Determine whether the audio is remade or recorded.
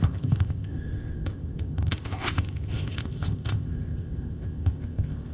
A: remade